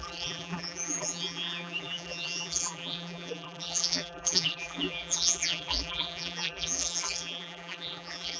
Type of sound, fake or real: fake